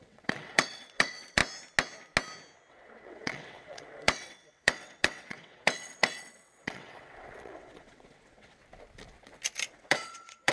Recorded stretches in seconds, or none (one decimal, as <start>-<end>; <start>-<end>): 1.4-2.7; 8.6-9.7